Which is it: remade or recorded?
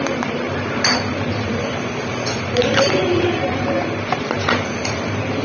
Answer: remade